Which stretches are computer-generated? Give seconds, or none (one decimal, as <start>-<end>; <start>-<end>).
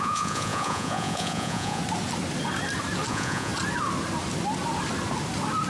0.0-1.8; 3.1-3.5